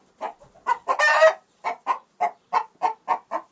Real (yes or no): yes